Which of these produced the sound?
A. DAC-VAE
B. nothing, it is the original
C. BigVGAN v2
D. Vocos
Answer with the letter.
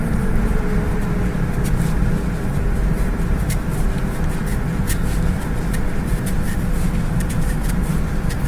C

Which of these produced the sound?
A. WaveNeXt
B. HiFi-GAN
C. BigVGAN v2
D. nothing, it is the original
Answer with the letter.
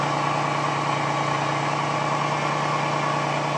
D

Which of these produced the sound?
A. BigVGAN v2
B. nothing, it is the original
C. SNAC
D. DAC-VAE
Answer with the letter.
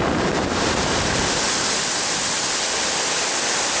A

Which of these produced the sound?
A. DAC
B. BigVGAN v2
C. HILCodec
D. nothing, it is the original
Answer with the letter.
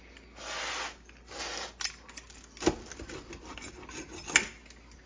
D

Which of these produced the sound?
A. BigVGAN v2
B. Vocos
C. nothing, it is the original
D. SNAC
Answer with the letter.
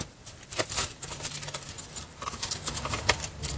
A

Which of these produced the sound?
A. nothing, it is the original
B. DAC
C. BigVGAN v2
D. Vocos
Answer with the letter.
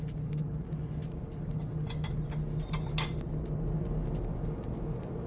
A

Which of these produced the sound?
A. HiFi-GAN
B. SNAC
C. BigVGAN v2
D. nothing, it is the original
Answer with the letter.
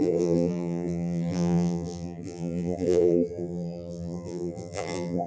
C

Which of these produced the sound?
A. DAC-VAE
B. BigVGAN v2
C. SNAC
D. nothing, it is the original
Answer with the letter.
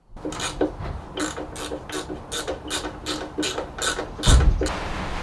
D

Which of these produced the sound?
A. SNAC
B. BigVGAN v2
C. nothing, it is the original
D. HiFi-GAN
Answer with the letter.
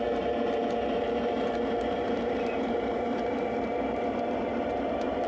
B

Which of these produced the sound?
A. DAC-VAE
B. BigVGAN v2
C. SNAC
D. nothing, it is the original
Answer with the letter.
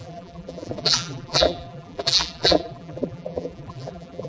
B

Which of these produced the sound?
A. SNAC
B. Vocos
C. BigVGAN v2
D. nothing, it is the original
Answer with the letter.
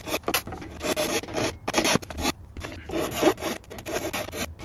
D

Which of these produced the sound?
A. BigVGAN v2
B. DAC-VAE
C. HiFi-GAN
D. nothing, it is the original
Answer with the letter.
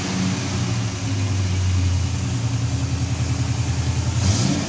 D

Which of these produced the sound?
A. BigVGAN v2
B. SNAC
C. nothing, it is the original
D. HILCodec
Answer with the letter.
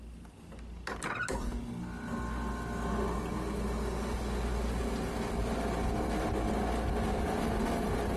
C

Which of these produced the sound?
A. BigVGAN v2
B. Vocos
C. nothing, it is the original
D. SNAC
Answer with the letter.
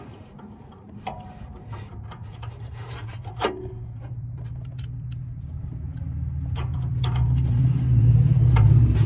A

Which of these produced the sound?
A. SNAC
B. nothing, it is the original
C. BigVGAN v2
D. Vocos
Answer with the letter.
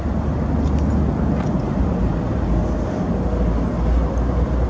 B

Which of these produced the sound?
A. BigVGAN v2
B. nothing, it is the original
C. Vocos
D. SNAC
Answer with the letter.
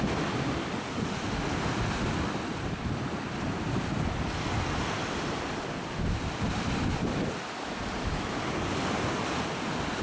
A